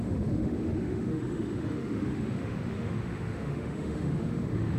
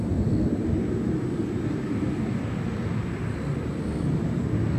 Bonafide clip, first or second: second